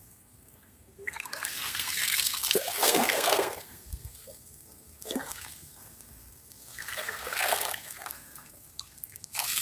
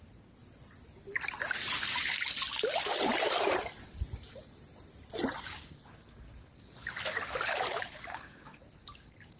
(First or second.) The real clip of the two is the second